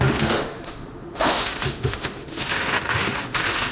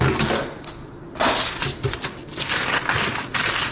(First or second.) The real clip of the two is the second